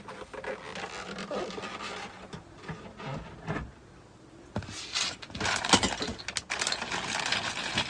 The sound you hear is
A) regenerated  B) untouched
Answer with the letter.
B